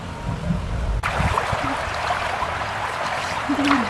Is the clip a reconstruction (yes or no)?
no